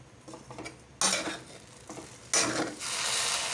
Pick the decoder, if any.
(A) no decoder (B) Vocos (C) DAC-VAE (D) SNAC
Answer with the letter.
A